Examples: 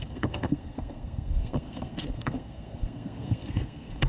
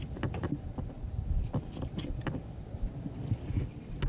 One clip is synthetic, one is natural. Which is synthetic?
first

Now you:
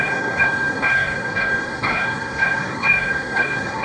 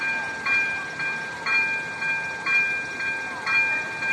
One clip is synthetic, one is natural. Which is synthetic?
first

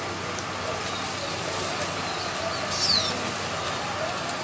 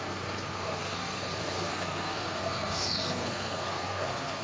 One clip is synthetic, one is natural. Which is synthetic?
second